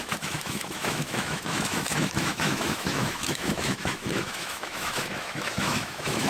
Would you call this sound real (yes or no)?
no